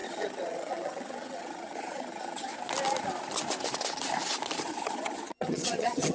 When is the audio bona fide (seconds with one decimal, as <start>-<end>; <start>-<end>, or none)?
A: 2.5-4.6